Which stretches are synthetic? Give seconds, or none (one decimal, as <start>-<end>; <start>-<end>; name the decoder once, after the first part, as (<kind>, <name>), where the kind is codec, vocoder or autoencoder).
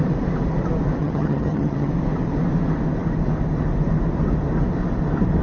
1.0-1.9 (vocoder, HiFi-GAN)